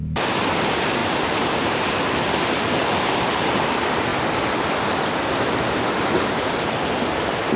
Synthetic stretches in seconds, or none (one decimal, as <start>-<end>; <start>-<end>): 1.0-1.9